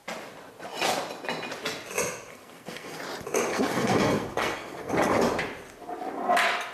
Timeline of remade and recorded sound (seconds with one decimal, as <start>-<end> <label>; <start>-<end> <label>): 0.0-2.3 recorded; 2.3-3.0 remade; 3.0-3.5 recorded; 3.5-4.9 remade; 4.9-6.7 recorded